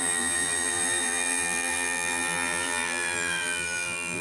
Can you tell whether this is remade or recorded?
remade